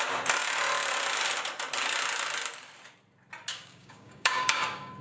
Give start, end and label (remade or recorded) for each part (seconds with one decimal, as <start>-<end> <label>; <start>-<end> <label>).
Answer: 0.0-3.5 recorded; 3.5-5.0 remade